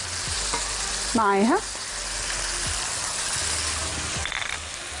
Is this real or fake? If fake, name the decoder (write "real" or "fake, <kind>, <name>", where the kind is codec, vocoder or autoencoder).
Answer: real